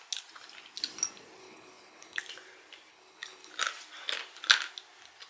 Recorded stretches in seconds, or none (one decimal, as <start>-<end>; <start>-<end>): 0.0-1.4; 2.2-2.9; 3.5-5.3